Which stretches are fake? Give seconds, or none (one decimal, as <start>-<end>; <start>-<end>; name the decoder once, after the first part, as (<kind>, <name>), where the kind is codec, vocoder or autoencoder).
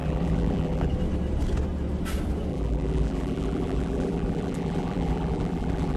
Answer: 0.0-0.9 (vocoder, BigVGAN v2); 2.5-6.0